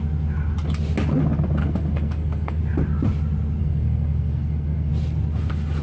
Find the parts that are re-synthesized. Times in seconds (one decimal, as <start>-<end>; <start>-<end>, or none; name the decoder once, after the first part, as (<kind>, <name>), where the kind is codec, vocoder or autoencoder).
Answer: 1.6-2.6 (codec, SNAC); 3.6-4.9